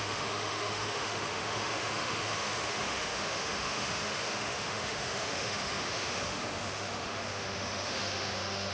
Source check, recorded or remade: remade